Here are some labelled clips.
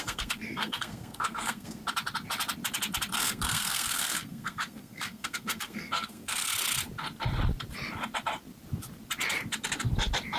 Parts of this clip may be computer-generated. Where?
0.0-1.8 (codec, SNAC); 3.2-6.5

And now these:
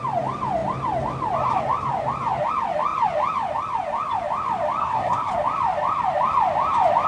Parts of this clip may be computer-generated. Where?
4.8-5.3 (codec, SNAC)

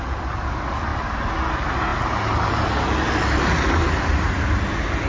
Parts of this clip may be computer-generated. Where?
none

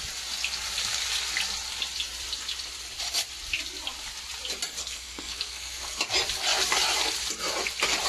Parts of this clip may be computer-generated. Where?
4.8-6.0 (codec, SNAC)

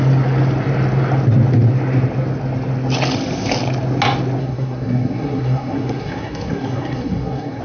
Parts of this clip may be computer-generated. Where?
4.4-7.6 (codec, SNAC)

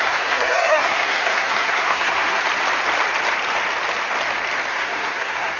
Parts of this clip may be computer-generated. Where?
0.0-2.4 (codec, SNAC); 4.7-5.6

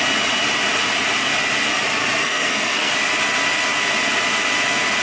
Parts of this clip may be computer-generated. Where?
2.2-2.9 (codec, SNAC)

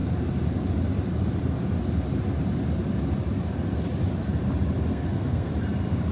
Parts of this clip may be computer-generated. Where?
4.9-5.5 (codec, SNAC)